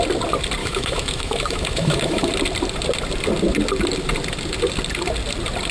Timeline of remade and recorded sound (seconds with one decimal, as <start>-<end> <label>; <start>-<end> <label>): 0.0-0.6 recorded; 0.6-2.3 remade; 2.3-5.7 recorded